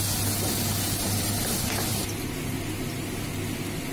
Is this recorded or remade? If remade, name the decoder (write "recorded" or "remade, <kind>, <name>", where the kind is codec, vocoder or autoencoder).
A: recorded